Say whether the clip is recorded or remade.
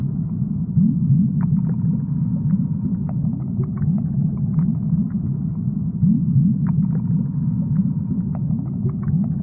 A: remade